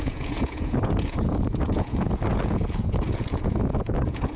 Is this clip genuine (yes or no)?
no